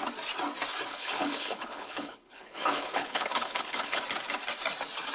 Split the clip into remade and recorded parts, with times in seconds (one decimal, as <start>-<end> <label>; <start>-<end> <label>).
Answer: 0.0-0.9 recorded; 0.9-4.0 remade; 4.0-5.1 recorded